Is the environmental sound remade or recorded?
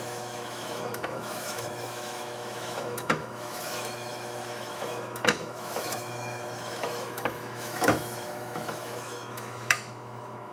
remade